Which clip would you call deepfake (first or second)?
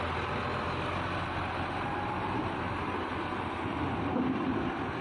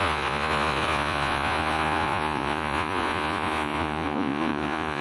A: second